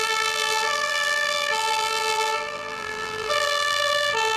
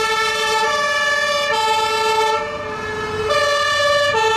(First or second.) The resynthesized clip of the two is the first